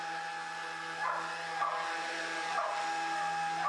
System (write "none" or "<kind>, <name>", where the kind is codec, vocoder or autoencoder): none